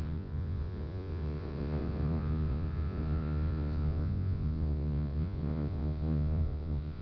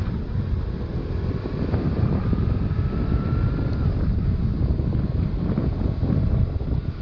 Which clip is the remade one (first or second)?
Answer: first